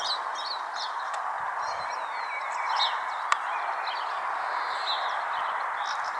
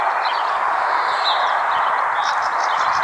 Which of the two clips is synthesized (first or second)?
second